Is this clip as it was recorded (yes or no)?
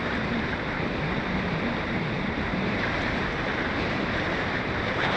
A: no